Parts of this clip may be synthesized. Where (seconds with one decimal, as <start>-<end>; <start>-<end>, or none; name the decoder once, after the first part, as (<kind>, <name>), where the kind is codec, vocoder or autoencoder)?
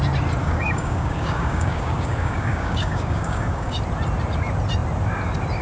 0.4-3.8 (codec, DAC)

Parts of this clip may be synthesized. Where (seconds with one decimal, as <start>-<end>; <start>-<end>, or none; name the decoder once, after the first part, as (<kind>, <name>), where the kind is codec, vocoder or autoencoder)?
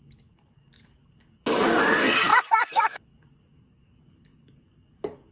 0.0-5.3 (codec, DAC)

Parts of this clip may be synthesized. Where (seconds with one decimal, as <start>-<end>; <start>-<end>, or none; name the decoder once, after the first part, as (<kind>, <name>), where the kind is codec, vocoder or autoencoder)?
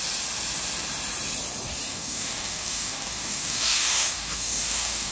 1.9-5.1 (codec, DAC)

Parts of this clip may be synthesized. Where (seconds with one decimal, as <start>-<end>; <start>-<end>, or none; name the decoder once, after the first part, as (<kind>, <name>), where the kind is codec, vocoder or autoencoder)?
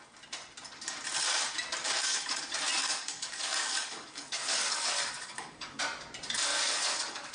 1.8-2.4 (codec, DAC); 2.8-5.8; 6.5-7.3